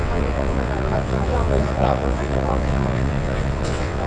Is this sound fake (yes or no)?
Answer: yes